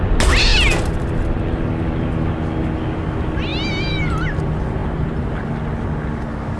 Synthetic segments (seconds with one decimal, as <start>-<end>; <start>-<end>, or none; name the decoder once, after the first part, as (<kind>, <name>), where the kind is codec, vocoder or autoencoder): 4.8-5.5 (vocoder, BigVGAN v2)